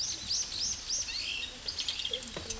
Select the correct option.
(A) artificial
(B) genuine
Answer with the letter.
B